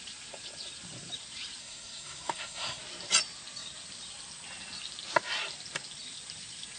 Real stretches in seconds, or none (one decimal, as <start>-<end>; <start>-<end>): 0.0-1.6; 2.8-6.8